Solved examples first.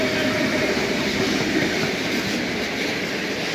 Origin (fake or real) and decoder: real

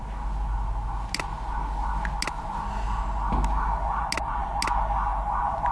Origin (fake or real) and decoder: real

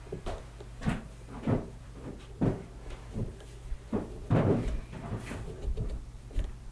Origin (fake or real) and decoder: fake, vocoder, BigVGAN v2